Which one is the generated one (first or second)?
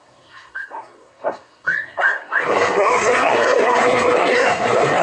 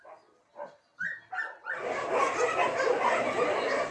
first